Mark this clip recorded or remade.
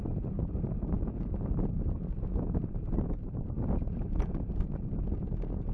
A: recorded